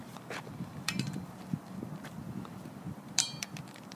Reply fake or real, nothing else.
fake